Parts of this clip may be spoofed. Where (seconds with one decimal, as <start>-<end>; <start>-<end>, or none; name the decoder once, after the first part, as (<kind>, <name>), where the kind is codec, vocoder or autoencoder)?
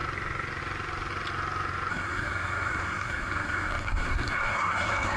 1.9-5.2 (codec, SNAC)